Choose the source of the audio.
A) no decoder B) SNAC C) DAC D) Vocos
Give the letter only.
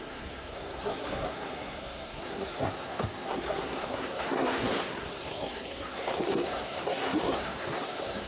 B